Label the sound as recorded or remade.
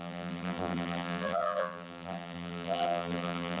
remade